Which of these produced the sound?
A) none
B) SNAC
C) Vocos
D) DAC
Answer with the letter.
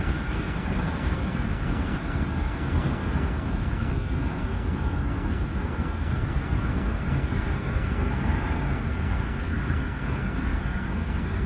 B